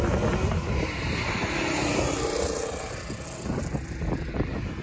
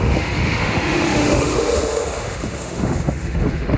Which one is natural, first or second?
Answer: first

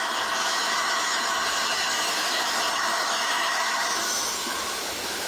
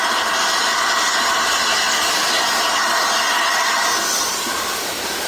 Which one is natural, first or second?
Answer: second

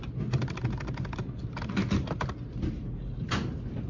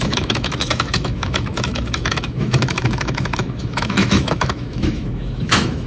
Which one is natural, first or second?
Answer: first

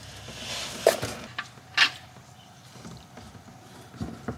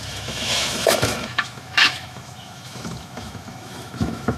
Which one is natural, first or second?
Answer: first